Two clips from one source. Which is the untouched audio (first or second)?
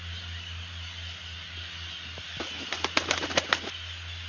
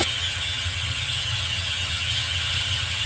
first